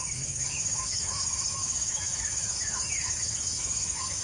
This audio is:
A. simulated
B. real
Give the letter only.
A